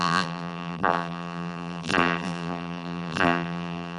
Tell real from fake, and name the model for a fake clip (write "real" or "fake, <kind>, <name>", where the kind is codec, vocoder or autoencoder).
fake, vocoder, BigVGAN v2